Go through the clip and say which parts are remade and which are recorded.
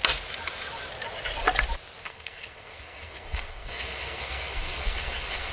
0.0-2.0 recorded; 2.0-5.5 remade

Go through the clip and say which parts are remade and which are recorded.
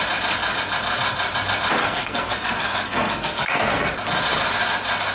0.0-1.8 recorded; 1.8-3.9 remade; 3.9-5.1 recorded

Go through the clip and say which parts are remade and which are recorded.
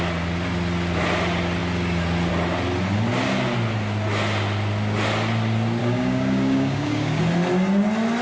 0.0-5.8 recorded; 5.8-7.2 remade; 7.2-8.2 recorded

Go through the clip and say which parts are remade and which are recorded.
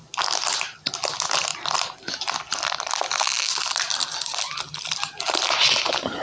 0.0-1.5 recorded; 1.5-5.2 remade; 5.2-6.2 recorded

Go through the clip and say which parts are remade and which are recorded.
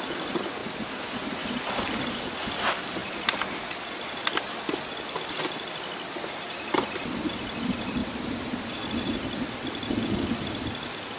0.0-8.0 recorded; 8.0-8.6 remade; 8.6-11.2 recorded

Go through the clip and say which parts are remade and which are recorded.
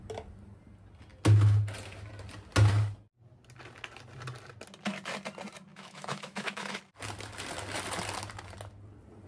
0.0-5.7 recorded; 5.7-6.8 remade; 6.8-9.3 recorded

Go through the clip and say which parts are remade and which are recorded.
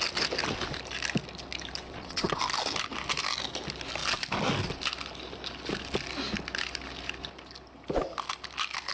0.0-1.8 recorded; 1.8-2.4 remade; 2.4-8.9 recorded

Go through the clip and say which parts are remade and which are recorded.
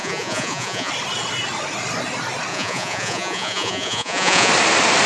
0.0-0.9 remade; 0.9-2.5 recorded; 2.5-4.5 remade; 4.5-5.1 recorded